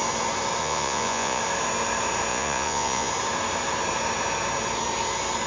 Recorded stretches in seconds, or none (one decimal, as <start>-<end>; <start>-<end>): 0.0-0.6; 1.4-2.3; 3.1-5.5